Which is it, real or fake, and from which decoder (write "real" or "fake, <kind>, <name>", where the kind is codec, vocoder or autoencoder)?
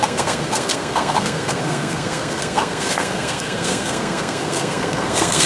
fake, codec, SNAC